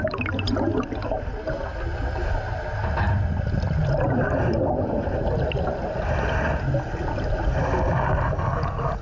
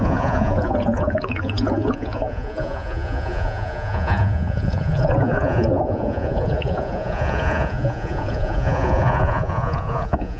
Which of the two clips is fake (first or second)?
second